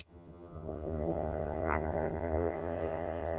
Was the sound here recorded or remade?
remade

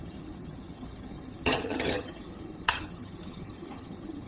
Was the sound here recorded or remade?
remade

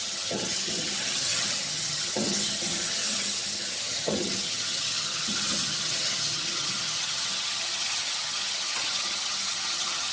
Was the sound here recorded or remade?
remade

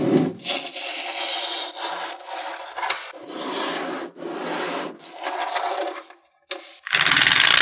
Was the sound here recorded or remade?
recorded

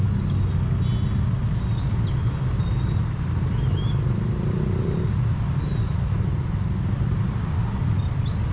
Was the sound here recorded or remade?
recorded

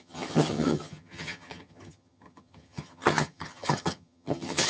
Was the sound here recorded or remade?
remade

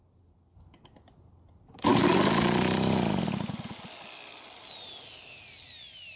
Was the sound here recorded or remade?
recorded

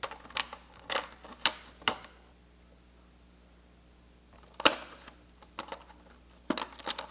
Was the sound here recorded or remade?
recorded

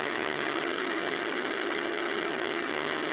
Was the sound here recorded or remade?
remade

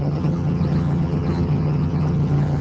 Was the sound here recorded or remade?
remade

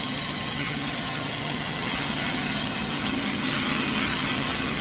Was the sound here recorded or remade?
remade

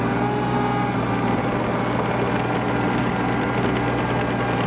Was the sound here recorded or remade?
recorded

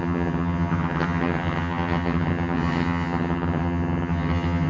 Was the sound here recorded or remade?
remade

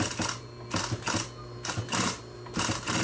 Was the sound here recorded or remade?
recorded